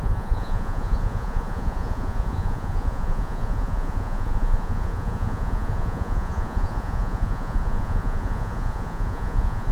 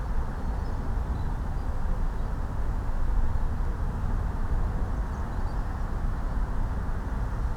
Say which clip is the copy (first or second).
first